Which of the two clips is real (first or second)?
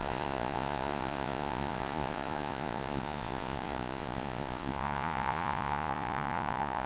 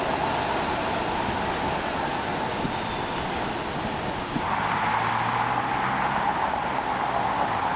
second